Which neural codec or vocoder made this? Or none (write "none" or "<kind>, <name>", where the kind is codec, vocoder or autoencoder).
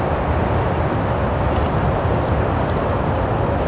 none